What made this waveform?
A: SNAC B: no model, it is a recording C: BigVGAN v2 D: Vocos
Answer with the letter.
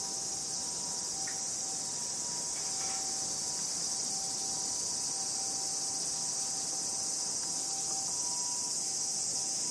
B